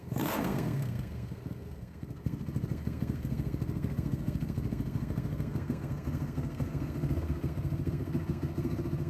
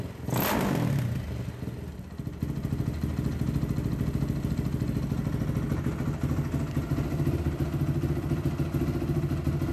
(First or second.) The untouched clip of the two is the second